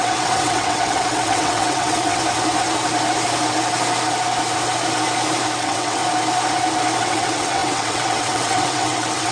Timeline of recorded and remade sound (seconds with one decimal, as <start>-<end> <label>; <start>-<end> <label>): 0.0-2.2 remade; 2.2-5.6 recorded; 5.6-6.0 remade; 6.0-7.0 recorded; 7.0-9.3 remade